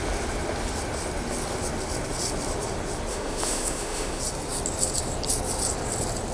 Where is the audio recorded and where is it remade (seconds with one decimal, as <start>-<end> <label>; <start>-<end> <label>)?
0.0-3.1 recorded; 3.1-4.2 remade; 4.2-6.3 recorded